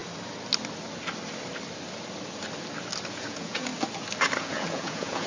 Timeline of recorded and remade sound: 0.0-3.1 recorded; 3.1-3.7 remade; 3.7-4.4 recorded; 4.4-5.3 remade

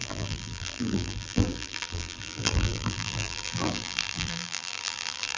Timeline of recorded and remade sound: 0.0-5.4 remade

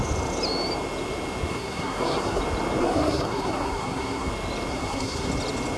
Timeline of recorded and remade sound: 0.0-1.5 recorded; 1.5-2.4 remade; 2.4-2.8 recorded; 2.8-4.3 remade; 4.3-4.7 recorded; 4.7-5.3 remade; 5.3-5.8 recorded

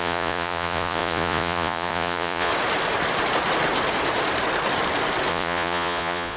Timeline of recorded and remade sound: 0.0-2.5 remade; 2.5-5.3 recorded; 5.3-6.4 remade

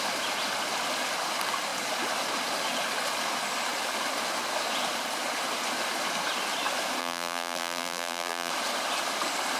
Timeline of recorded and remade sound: 0.0-7.0 recorded; 7.0-8.5 remade; 8.5-9.6 recorded

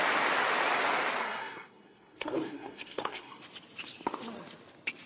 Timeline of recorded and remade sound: 0.0-1.2 recorded; 1.2-3.4 remade; 3.4-5.1 recorded

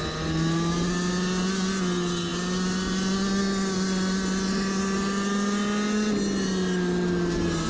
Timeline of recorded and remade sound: 0.0-7.7 recorded